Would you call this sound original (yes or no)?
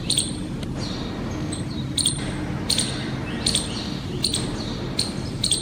yes